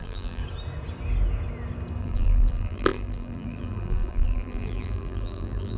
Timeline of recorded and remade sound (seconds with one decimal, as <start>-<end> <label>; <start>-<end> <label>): 0.0-0.4 remade; 0.4-2.0 recorded; 2.0-5.8 remade